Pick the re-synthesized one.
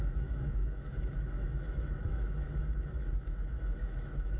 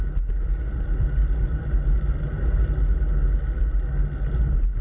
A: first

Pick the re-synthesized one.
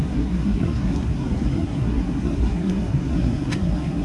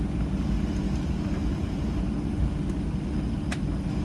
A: first